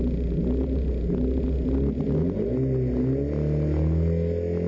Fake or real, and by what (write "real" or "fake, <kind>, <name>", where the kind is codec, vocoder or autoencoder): real